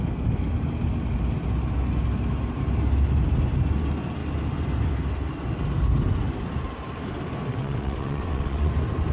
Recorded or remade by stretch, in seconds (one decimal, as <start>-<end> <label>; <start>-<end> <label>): 0.0-7.5 recorded; 7.5-8.7 remade; 8.7-9.1 recorded